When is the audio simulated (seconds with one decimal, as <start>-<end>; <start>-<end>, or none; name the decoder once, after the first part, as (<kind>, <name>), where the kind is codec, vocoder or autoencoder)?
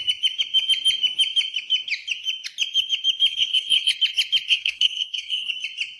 3.3-3.9 (codec, SNAC); 4.5-5.5